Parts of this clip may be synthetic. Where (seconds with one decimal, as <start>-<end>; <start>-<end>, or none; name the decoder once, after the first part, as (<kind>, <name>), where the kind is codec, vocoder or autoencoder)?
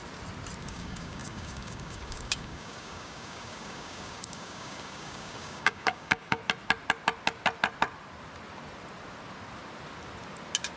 0.6-6.4 (codec, DAC)